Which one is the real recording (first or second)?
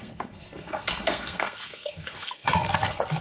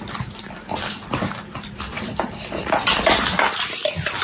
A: second